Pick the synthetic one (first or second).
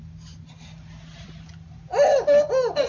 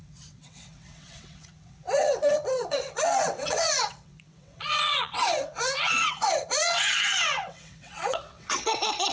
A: second